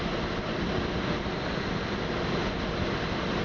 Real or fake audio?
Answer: real